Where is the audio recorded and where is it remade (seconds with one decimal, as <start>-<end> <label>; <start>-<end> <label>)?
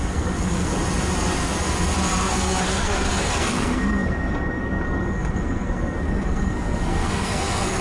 0.0-0.7 remade; 0.7-2.2 recorded; 2.2-7.8 remade